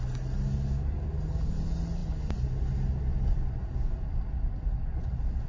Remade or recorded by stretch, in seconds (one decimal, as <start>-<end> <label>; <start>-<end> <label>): 0.0-5.5 recorded